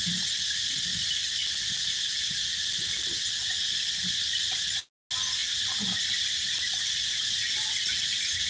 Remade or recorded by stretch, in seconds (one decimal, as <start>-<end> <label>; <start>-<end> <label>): 0.0-8.5 recorded